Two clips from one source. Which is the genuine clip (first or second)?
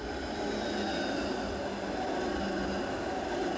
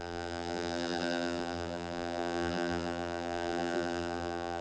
first